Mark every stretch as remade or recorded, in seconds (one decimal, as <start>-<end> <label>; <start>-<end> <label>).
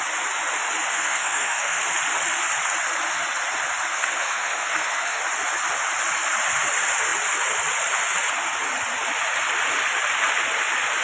0.0-0.9 recorded; 0.9-1.8 remade; 1.8-3.9 recorded; 3.9-5.2 remade; 5.2-11.0 recorded